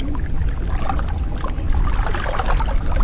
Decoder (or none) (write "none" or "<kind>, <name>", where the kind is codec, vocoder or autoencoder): none